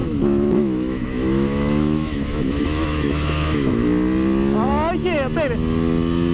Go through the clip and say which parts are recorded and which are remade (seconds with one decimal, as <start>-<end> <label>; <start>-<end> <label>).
0.0-3.8 remade; 3.8-6.3 recorded